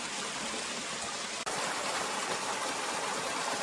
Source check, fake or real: real